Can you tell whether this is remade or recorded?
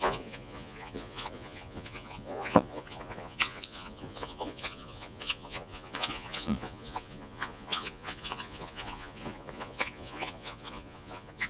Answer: remade